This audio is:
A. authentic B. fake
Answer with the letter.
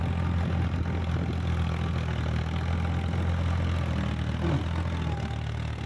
A